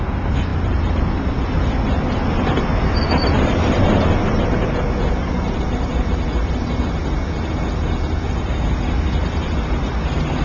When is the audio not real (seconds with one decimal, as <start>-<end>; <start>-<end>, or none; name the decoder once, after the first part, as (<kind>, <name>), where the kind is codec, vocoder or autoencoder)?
none